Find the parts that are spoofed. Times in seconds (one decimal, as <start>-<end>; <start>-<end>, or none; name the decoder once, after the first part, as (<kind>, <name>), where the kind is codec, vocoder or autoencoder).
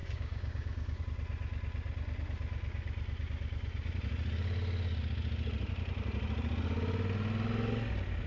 0.0-1.0 (codec, DAC)